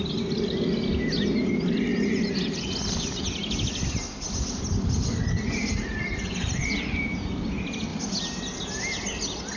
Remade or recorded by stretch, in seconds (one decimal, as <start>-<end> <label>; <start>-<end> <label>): 0.0-9.6 recorded